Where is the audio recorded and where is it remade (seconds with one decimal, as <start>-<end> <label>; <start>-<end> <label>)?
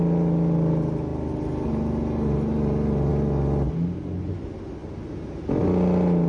0.0-6.3 recorded